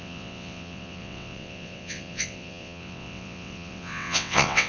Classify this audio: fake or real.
fake